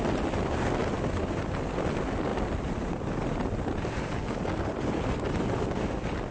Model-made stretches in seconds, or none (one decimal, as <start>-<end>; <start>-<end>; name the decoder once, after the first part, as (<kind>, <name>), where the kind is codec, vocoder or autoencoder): none